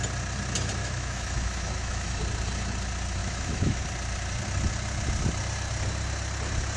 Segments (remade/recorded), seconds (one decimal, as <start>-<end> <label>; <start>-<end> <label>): 0.0-0.8 recorded; 0.8-2.2 remade; 2.2-3.2 recorded; 3.2-3.8 remade; 3.8-6.8 recorded

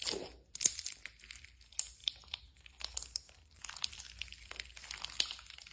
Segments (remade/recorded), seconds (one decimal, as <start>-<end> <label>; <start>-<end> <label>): 0.0-5.7 recorded

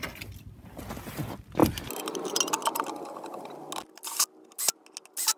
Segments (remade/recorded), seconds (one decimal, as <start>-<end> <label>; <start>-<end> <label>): 0.0-5.4 recorded

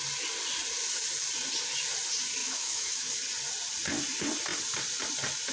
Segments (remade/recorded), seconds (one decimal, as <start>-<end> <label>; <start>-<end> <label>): 0.0-2.4 recorded; 2.4-3.1 remade; 3.1-5.5 recorded

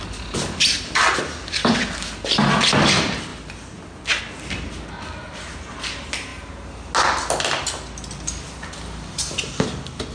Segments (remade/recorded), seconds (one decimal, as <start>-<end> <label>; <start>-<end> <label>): 0.0-10.1 recorded

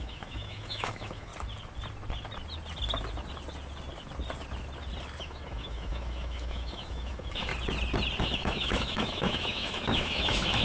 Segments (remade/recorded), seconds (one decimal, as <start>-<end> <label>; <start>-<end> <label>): 0.0-1.3 remade; 1.3-5.2 recorded; 5.2-7.5 remade; 7.5-8.2 recorded; 8.2-10.6 remade